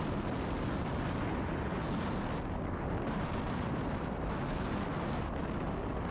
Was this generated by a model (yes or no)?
no